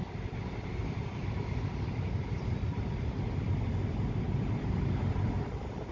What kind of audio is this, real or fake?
real